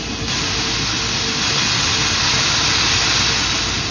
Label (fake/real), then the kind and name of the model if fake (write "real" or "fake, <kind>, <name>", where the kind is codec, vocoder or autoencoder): real